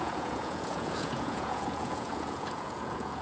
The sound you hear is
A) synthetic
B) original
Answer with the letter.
A